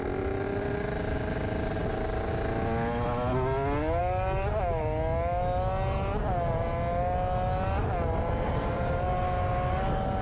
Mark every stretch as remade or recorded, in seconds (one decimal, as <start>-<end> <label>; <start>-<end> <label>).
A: 0.0-10.2 recorded